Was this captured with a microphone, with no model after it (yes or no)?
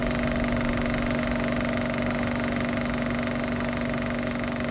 yes